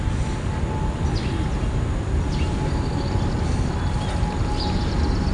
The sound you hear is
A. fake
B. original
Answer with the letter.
B